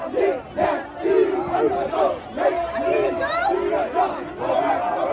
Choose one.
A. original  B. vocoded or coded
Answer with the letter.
A